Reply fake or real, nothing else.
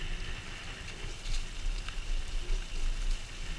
real